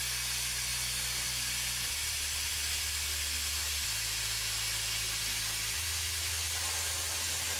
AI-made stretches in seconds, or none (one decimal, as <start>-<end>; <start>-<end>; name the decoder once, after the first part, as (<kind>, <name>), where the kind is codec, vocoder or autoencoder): none